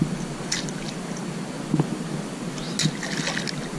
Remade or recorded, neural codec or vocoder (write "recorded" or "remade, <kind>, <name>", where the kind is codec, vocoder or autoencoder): recorded